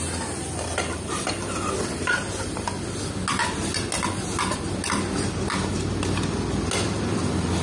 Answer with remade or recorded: recorded